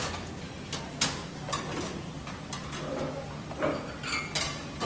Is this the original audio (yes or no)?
yes